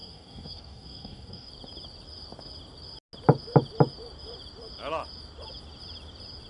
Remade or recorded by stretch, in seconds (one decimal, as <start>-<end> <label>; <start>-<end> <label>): 0.0-1.5 remade; 1.5-6.5 recorded